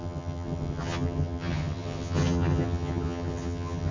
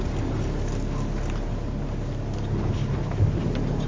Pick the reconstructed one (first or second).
first